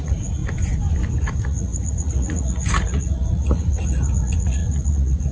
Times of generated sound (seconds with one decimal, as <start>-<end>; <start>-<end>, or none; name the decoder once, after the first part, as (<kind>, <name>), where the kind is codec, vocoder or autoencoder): 0.0-0.4 (vocoder, Vocos); 1.2-5.3